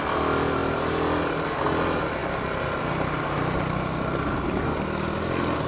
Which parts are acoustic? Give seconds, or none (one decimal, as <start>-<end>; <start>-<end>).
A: 0.0-5.7

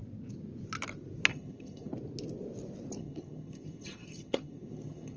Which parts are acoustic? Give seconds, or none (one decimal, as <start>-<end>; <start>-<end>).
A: 0.0-1.3; 1.9-3.0

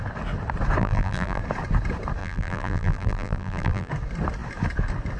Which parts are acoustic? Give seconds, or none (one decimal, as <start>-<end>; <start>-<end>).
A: 0.0-0.8; 1.4-2.2; 3.9-5.2